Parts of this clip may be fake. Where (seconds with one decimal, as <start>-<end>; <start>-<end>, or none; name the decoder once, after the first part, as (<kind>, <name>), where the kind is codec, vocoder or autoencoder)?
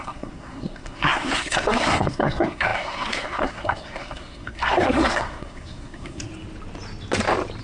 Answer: 0.0-6.3 (codec, SNAC)